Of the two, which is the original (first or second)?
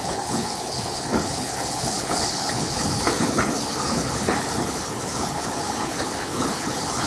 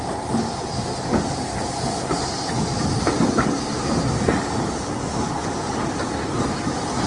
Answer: second